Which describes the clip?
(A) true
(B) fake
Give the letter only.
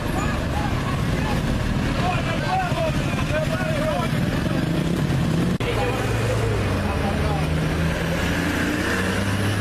A